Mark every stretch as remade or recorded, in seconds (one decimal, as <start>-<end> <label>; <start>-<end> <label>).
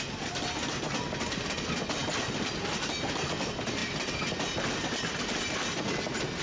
0.0-6.4 recorded